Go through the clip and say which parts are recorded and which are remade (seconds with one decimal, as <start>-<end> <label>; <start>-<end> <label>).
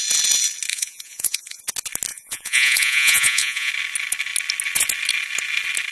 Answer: 0.0-0.7 recorded; 0.7-1.6 remade; 1.6-2.1 recorded; 2.1-3.7 remade; 3.7-5.9 recorded